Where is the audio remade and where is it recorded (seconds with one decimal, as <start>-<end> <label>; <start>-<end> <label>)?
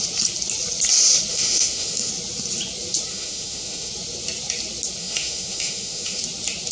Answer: 0.0-1.3 recorded; 1.3-2.1 remade; 2.1-3.1 recorded; 3.1-3.9 remade; 3.9-5.0 recorded; 5.0-6.2 remade; 6.2-6.7 recorded